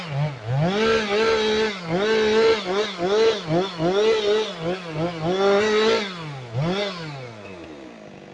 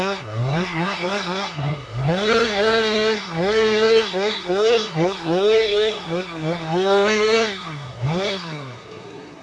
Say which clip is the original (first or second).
first